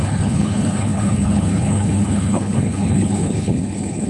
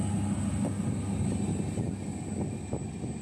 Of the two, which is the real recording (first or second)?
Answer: second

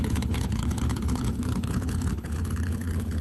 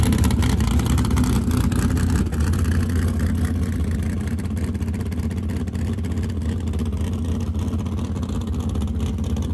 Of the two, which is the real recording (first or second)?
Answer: second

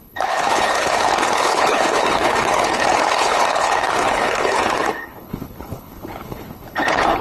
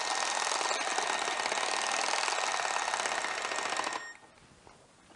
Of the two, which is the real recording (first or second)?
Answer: second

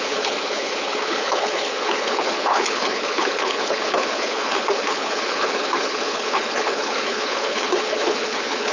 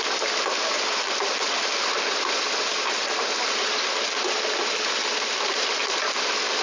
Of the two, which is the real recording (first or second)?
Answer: second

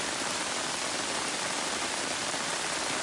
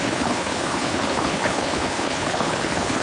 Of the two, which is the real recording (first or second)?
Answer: first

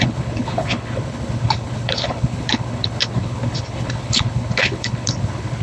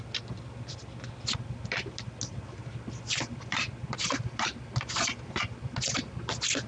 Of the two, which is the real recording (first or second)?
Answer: second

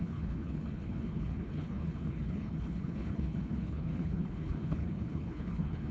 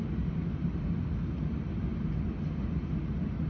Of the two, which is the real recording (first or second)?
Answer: second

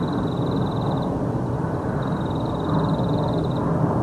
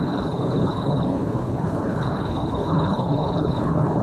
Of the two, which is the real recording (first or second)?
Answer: first